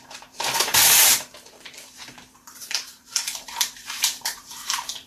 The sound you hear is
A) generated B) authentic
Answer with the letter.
A